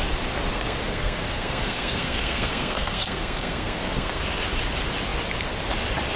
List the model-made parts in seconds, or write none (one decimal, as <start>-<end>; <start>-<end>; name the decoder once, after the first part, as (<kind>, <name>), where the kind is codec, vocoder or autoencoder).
0.5-4.2 (codec, SNAC)